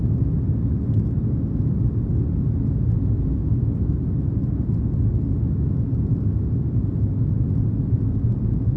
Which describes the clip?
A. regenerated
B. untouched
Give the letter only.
B